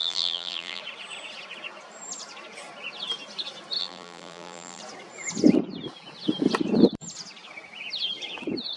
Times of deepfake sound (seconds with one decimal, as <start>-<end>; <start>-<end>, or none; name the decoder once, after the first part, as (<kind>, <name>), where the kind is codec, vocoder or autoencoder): 0.0-0.8 (vocoder, BigVGAN v2); 3.8-4.8